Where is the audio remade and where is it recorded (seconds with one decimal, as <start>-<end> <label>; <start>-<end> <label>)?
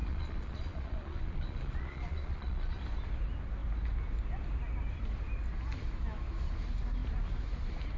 0.0-2.8 remade; 2.8-8.0 recorded